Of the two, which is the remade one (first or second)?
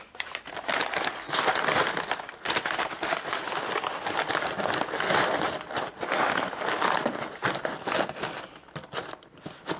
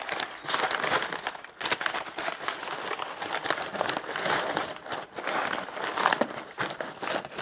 second